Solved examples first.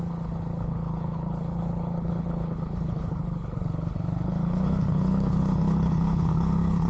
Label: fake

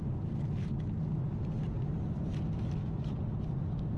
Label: real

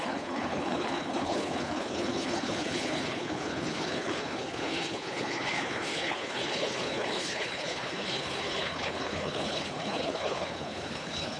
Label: fake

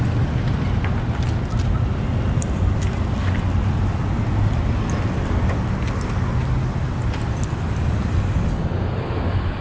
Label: real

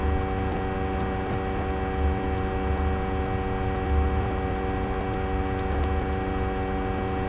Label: real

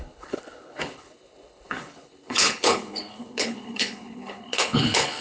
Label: fake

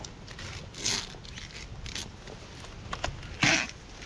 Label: real